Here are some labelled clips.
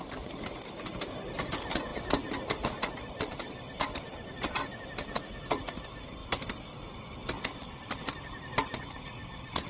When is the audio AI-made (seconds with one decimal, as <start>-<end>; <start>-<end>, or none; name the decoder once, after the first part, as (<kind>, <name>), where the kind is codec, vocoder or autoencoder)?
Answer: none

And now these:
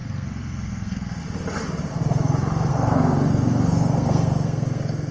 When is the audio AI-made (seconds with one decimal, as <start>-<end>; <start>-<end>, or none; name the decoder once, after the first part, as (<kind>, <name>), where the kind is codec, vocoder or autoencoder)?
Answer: 0.0-1.2 (codec, SNAC); 2.7-5.1

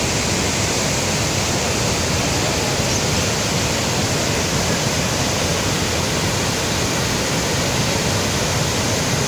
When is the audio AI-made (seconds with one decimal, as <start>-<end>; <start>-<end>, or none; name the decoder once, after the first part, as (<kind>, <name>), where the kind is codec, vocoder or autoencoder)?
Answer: none

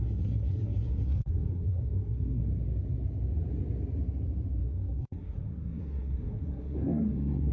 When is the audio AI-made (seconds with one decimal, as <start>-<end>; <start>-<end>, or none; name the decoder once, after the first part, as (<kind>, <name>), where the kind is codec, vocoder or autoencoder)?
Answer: 0.0-2.5 (codec, SNAC); 4.6-7.5

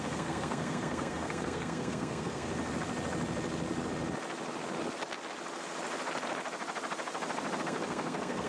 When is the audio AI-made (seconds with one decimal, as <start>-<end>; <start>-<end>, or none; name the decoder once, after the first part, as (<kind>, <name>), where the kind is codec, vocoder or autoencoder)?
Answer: 0.0-2.5 (codec, SNAC); 7.6-8.5

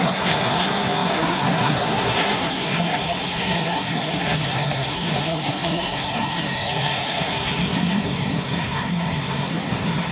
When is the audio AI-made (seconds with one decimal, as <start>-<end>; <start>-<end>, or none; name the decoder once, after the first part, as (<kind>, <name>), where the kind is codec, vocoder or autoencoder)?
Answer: 0.0-10.1 (codec, SNAC)